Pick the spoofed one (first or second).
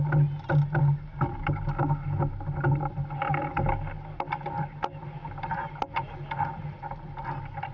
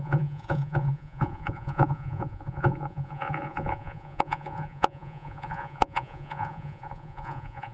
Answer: second